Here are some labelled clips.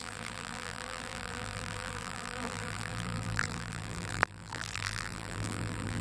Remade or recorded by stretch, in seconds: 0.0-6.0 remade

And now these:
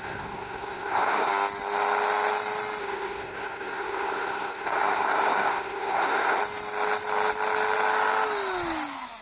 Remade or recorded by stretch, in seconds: 0.0-1.3 remade; 1.3-2.8 recorded; 2.8-6.4 remade; 6.4-9.2 recorded